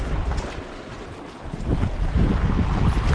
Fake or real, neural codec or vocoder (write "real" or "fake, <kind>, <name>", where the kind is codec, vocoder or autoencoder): real